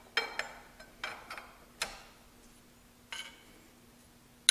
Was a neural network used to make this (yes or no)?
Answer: no